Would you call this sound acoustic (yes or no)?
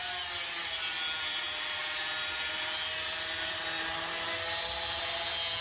yes